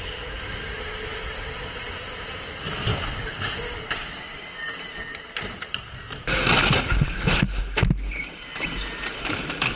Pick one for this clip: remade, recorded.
recorded